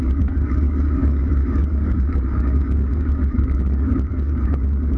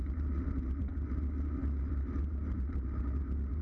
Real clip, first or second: second